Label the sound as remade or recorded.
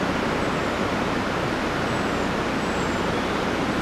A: recorded